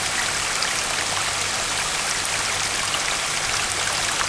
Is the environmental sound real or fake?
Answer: real